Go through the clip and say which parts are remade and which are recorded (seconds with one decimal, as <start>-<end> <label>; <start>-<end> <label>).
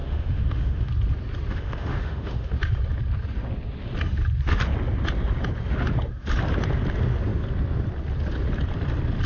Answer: 0.0-0.9 remade; 0.9-1.5 recorded; 1.5-2.5 remade; 2.5-9.3 recorded